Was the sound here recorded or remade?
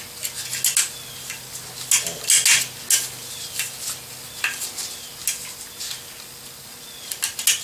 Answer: recorded